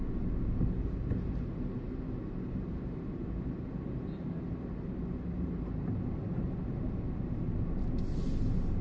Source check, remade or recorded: recorded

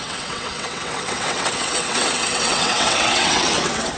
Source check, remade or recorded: remade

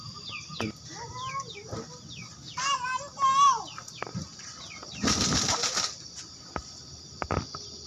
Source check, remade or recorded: recorded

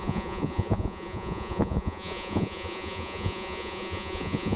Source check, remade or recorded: remade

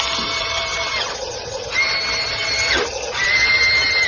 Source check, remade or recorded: recorded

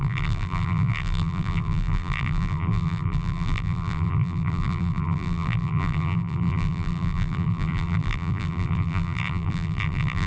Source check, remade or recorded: remade